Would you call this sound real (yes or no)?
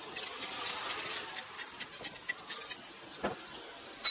yes